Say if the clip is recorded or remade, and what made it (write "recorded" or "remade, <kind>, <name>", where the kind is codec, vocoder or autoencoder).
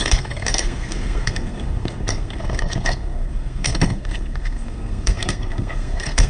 remade, codec, SNAC